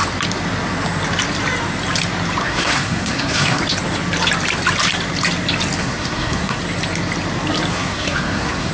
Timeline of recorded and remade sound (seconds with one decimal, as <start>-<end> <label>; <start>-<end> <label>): 0.0-2.4 recorded; 2.4-3.6 remade; 3.6-5.8 recorded; 5.8-6.6 remade; 6.6-7.7 recorded; 7.7-8.7 remade